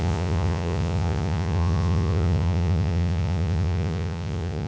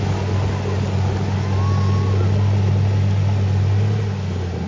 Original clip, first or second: second